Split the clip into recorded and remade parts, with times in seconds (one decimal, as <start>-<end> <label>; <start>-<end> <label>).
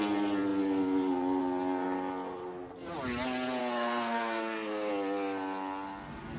0.0-3.6 recorded; 3.6-4.9 remade; 4.9-6.4 recorded